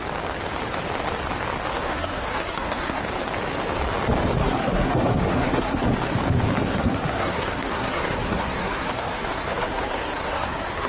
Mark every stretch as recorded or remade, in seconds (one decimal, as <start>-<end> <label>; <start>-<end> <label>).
0.0-1.7 recorded; 1.7-3.0 remade; 3.0-4.4 recorded; 4.4-5.9 remade; 5.9-6.6 recorded; 6.6-10.9 remade

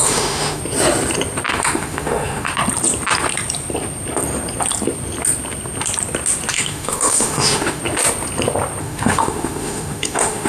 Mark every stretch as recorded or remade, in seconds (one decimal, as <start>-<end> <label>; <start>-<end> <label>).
0.0-0.6 remade; 0.6-1.5 recorded; 1.5-2.5 remade; 2.5-6.5 recorded; 6.5-7.8 remade; 7.8-8.8 recorded; 8.8-10.5 remade

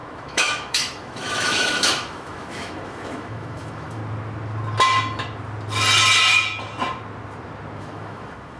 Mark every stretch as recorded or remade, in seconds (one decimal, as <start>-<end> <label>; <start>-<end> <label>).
0.0-4.0 remade; 4.0-7.8 recorded; 7.8-8.6 remade

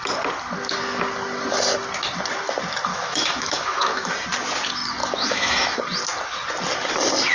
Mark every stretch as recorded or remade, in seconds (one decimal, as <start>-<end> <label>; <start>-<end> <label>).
0.0-2.9 recorded; 2.9-4.1 remade; 4.1-5.0 recorded; 5.0-5.8 remade; 5.8-7.3 recorded

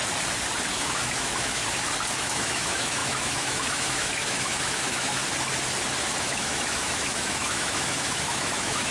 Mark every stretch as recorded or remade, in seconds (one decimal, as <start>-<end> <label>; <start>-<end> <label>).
0.0-0.7 recorded; 0.7-1.6 remade; 1.6-2.2 recorded; 2.2-5.2 remade; 5.2-6.2 recorded; 6.2-8.9 remade